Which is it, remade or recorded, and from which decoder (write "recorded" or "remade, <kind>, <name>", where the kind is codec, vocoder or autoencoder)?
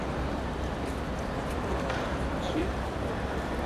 remade, vocoder, BigVGAN v2